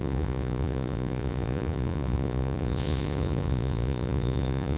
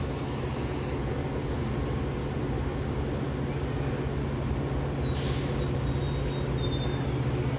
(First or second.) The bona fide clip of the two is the second